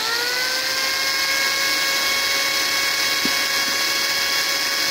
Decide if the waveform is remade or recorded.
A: recorded